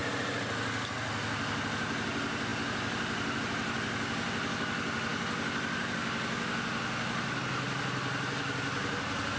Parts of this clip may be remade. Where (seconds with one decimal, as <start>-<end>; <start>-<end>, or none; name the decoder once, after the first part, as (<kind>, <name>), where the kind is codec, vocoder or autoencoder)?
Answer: none